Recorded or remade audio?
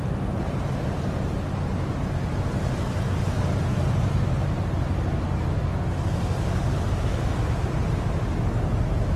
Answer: recorded